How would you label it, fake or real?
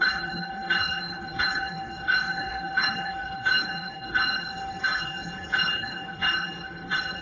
fake